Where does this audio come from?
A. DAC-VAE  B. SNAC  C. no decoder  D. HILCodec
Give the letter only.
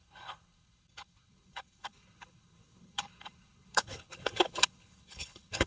D